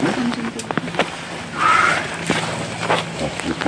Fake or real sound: real